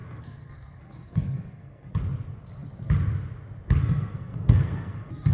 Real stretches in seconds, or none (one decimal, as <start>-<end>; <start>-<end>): 1.9-3.8